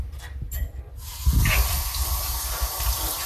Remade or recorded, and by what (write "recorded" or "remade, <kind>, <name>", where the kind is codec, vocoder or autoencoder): recorded